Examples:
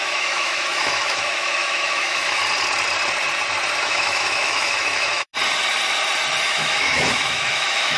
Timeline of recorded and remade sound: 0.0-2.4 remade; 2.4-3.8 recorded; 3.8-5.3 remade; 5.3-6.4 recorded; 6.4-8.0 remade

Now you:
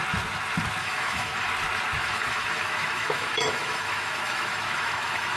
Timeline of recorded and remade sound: 0.0-0.8 recorded; 0.8-1.5 remade; 1.5-2.0 recorded; 2.0-5.4 remade

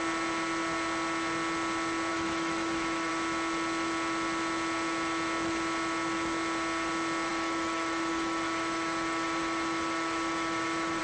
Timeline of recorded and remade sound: 0.0-2.1 recorded; 2.1-3.1 remade; 3.1-7.3 recorded; 7.3-11.0 remade